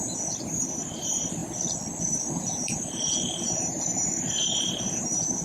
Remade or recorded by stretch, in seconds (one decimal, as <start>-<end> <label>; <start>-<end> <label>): 0.0-1.4 remade; 1.4-2.0 recorded; 2.0-5.4 remade